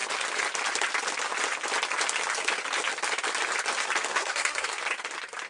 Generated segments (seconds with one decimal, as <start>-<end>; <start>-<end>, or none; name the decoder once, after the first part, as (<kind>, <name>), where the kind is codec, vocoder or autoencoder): 4.1-4.8 (codec, SNAC)